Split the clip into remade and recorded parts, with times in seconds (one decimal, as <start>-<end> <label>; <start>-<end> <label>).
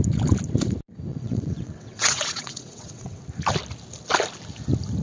0.0-1.1 recorded; 1.1-3.2 remade; 3.2-5.0 recorded